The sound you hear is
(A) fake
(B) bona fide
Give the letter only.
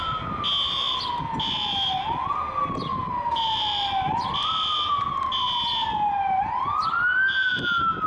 B